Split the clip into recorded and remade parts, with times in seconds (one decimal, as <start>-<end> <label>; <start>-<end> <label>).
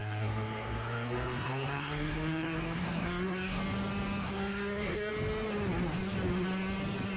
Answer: 0.0-3.6 remade; 3.6-4.2 recorded; 4.2-5.1 remade; 5.1-7.2 recorded